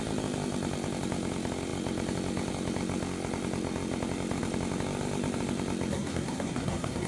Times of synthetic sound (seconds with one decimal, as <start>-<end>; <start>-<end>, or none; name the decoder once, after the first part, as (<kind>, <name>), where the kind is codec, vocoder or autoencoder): 5.9-7.1 (codec, SNAC)